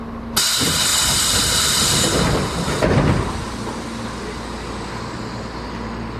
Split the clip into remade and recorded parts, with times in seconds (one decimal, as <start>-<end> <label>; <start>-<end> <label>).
0.0-6.2 recorded